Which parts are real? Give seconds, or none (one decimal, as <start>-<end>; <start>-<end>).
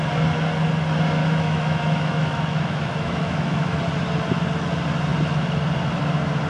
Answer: 0.0-1.2; 3.8-6.5